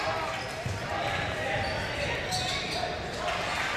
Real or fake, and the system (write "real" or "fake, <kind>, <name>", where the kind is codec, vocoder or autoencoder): real